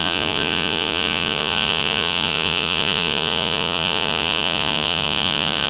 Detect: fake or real fake